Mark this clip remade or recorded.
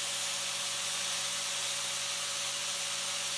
remade